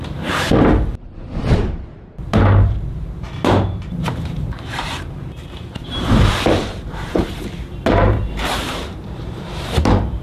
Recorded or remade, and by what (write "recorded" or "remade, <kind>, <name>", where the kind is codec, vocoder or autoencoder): remade, vocoder, BigVGAN v2